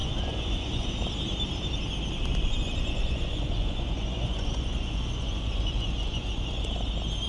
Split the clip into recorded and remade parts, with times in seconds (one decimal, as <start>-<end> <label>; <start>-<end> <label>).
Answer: 0.0-0.9 remade; 0.9-2.3 recorded; 2.3-6.7 remade; 6.7-7.3 recorded